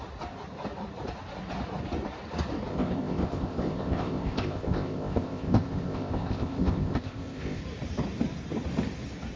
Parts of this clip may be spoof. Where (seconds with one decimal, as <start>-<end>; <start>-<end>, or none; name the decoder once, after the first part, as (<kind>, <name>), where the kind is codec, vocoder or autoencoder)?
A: 2.7-7.6 (codec, ZipCodec)